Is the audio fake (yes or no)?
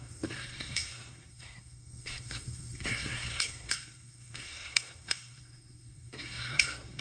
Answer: yes